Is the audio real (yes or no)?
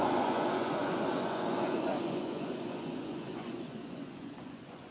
no